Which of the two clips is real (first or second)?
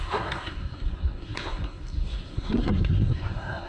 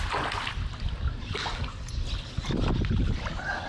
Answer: second